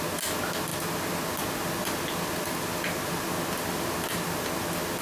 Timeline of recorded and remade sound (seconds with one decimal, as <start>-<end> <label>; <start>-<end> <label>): 0.0-5.0 recorded